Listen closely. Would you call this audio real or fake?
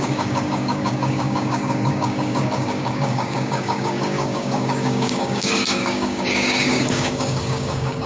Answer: fake